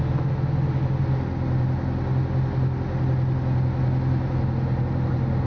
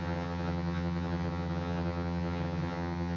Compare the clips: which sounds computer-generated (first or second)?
second